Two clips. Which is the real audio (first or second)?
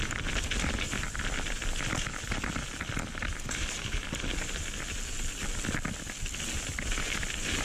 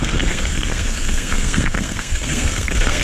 first